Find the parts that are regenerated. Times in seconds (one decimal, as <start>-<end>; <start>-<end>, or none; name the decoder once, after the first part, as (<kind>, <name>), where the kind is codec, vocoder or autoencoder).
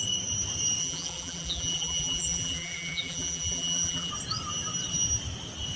0.8-4.1 (vocoder, BigVGAN v2)